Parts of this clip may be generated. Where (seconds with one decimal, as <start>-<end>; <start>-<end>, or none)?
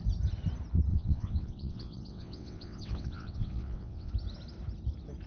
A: 0.9-4.1